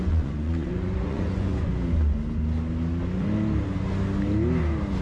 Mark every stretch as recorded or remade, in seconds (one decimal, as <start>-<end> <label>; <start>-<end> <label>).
0.0-1.7 remade; 1.7-5.0 recorded